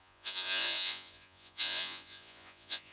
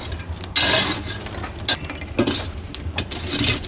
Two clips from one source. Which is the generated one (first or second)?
first